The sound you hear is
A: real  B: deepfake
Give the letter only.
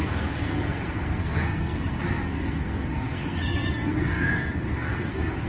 B